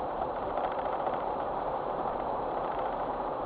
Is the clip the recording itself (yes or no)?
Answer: no